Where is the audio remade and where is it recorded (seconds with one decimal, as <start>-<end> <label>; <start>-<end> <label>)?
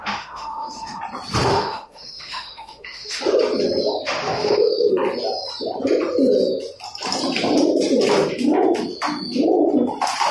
0.0-1.0 remade; 1.0-1.5 recorded; 1.5-3.2 remade; 3.2-4.2 recorded; 4.2-4.9 remade; 4.9-10.3 recorded